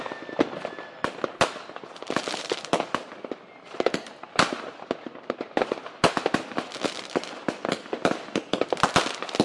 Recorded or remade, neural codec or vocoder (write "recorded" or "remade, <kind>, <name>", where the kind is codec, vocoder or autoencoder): recorded